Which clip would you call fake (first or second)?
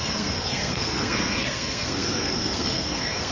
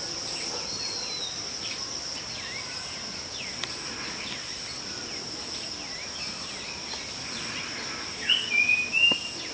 first